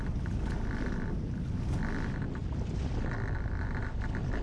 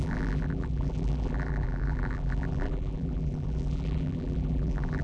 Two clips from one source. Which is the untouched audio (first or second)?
first